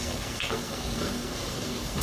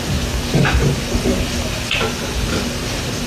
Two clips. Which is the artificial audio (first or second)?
first